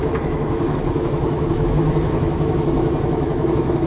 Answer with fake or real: fake